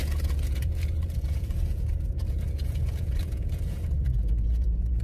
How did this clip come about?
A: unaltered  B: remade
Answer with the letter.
B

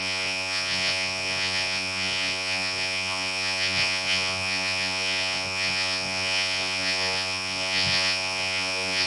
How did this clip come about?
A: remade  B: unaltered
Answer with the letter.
A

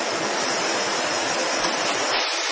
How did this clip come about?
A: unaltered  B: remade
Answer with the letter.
A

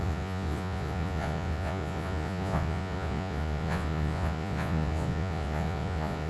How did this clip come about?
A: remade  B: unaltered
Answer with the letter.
A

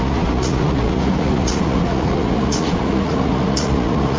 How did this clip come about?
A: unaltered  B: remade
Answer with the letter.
B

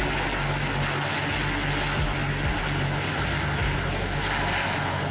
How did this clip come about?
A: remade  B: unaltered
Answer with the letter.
B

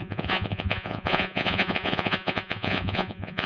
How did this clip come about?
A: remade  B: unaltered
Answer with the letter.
A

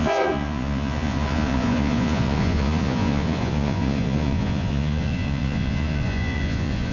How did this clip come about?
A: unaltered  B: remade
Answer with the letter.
B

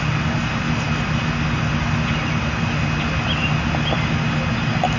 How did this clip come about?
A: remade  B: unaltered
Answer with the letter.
B